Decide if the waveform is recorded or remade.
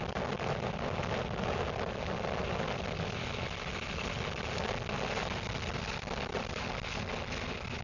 recorded